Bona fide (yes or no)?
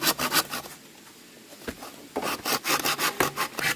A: yes